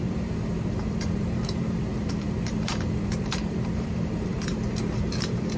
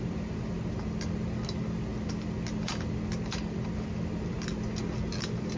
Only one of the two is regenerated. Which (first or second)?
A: first